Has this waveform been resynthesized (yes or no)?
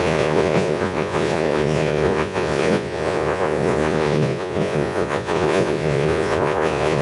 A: yes